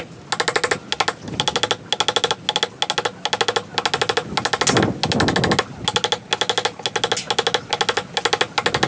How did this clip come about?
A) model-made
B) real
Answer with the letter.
B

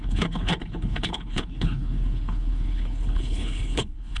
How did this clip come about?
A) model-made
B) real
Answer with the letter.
A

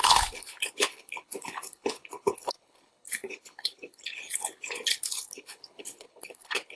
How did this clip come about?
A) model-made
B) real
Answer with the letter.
A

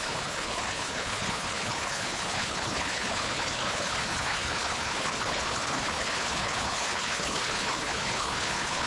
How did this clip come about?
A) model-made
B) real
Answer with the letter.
A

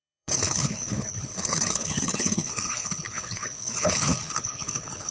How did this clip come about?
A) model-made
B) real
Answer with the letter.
A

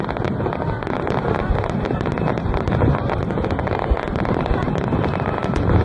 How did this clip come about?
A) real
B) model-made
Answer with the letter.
A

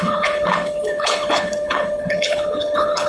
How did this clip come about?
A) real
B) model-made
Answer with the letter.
B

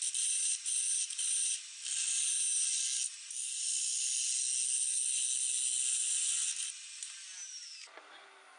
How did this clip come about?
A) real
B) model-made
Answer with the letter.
A